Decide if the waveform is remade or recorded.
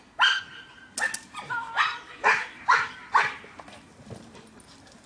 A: recorded